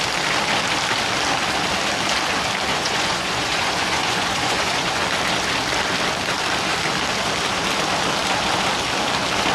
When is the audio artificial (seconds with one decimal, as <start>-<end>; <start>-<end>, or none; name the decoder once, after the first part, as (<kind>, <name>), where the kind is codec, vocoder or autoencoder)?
2.7-5.0 (vocoder, Vocos)